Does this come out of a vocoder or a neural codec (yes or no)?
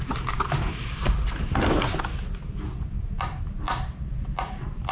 no